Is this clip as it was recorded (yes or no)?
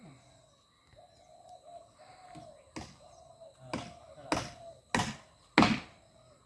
yes